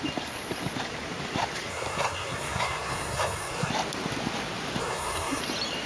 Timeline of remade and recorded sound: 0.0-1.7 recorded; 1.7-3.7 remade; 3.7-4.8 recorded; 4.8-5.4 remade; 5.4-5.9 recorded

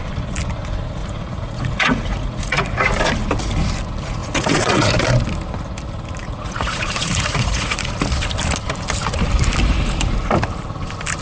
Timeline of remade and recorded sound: 0.0-1.0 recorded; 1.0-2.9 remade; 2.9-4.2 recorded; 4.2-4.9 remade; 4.9-6.2 recorded; 6.2-7.9 remade; 7.9-11.2 recorded